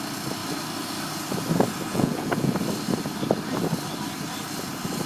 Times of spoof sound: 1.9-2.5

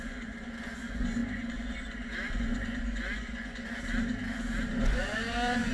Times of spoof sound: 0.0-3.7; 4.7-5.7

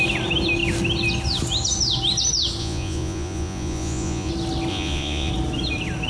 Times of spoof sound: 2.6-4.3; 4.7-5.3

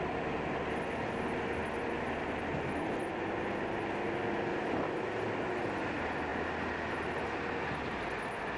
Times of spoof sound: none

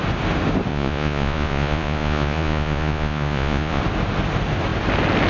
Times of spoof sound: 0.7-3.8

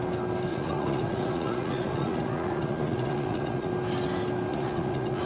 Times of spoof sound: 0.5-3.7; 4.5-5.3